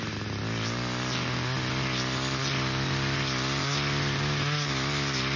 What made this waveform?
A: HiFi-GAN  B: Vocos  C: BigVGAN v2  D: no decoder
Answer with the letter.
D